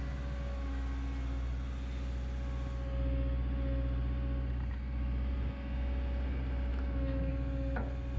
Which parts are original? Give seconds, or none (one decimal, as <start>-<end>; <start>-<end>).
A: 0.0-6.7; 7.3-8.2